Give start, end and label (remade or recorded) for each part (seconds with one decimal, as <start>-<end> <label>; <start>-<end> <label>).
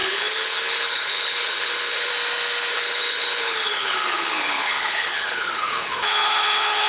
0.0-2.1 remade; 2.1-2.7 recorded; 2.7-6.9 remade